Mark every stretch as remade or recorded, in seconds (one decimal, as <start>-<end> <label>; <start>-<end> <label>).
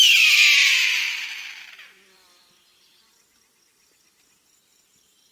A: 0.0-5.3 recorded